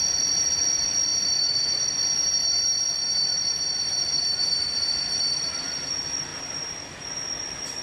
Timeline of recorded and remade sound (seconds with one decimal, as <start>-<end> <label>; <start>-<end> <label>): 0.0-1.1 recorded; 1.1-5.4 remade; 5.4-6.3 recorded; 6.3-7.0 remade; 7.0-7.8 recorded